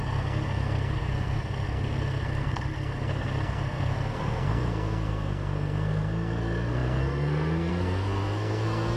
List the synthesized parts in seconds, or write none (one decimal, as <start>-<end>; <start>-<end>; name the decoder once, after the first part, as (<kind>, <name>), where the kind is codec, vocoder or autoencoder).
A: 0.0-9.0 (codec, SNAC)